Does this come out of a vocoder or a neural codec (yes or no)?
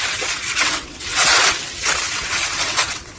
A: yes